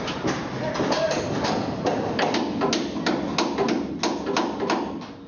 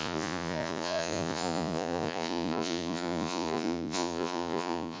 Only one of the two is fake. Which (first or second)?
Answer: second